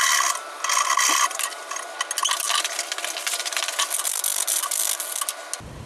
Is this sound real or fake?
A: real